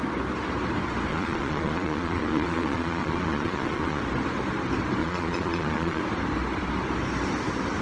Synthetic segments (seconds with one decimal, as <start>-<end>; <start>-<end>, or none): 1.1-4.0; 5.0-6.0